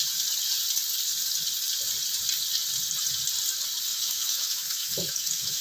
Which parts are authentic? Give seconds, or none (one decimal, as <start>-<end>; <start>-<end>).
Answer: 0.0-3.9